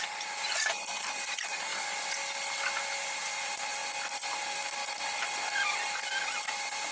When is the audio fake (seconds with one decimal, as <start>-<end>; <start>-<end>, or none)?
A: 0.0-1.7; 3.0-3.8; 4.3-4.8; 6.4-6.9